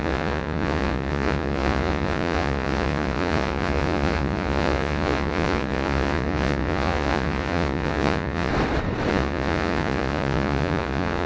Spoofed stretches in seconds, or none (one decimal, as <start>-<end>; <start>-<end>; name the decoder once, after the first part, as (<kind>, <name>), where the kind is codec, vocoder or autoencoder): 0.0-8.5 (vocoder, Vocos); 9.1-11.3